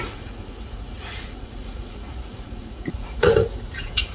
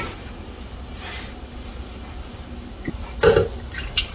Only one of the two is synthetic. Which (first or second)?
first